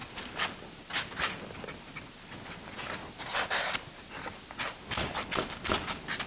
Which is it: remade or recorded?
recorded